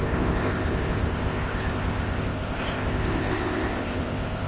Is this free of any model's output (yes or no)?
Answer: no